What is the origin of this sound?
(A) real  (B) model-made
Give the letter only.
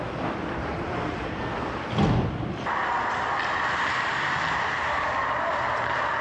A